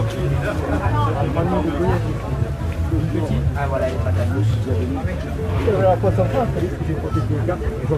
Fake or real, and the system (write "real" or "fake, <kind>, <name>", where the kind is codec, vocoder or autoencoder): real